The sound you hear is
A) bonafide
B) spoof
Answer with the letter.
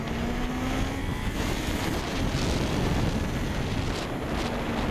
A